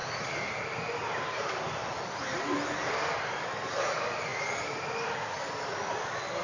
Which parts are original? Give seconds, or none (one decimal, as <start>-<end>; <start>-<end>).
0.0-6.4